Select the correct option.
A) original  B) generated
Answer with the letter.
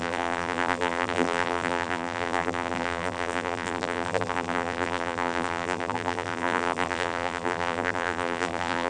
B